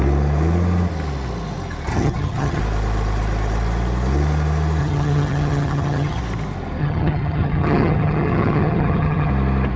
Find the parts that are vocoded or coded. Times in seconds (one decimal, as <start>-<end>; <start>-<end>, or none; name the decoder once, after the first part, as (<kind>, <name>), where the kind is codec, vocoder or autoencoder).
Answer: 1.9-2.6 (vocoder, HiFi-GAN); 4.8-6.2; 6.8-9.3